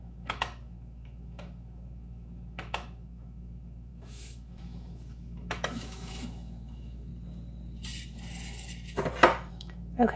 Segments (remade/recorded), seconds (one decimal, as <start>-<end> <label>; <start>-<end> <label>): 0.0-7.1 remade; 7.1-9.5 recorded; 9.5-10.2 remade